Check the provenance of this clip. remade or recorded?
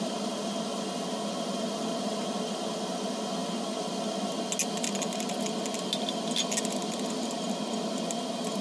recorded